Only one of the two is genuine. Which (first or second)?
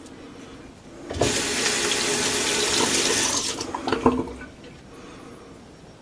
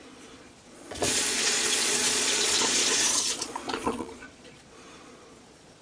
first